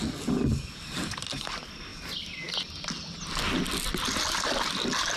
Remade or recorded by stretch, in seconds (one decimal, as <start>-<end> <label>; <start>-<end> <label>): 0.0-5.2 recorded